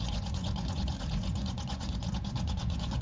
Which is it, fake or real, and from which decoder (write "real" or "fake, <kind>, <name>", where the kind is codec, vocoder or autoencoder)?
fake, vocoder, Vocos